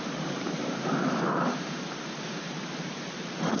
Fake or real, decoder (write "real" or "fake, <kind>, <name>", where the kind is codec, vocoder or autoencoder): fake, vocoder, BigVGAN v2